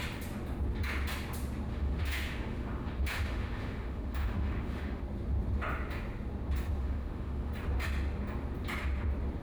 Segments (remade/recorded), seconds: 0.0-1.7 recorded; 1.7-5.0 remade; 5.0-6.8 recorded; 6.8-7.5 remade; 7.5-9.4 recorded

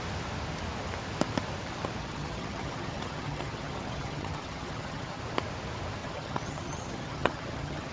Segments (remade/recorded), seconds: 0.0-2.0 recorded; 2.0-5.2 remade; 5.2-6.0 recorded; 6.0-7.9 remade

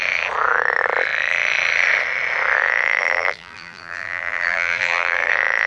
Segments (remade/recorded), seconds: 0.0-3.0 recorded; 3.0-5.3 remade; 5.3-5.7 recorded